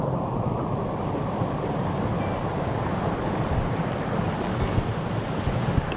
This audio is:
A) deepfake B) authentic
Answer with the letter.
B